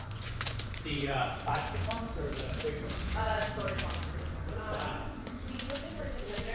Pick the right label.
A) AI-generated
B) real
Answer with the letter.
A